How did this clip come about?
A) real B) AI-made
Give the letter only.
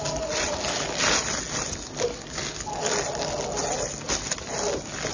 A